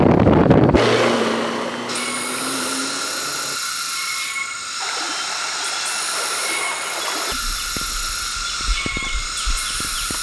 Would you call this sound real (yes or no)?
yes